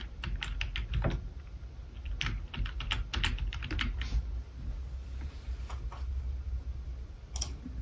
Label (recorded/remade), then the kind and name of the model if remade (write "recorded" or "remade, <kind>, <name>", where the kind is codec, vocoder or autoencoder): recorded